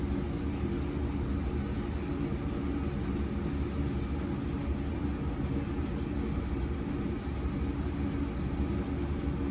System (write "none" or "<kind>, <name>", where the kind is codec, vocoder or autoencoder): none